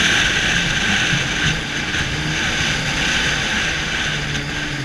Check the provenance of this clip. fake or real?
real